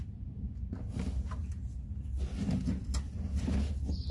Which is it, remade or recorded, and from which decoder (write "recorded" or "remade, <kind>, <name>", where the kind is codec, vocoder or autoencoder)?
recorded